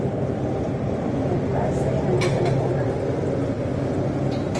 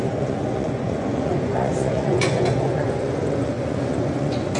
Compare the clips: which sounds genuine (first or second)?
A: first